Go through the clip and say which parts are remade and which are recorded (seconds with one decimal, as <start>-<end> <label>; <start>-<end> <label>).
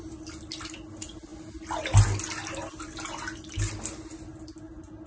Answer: 0.0-5.1 recorded